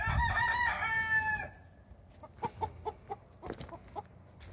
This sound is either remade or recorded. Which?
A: recorded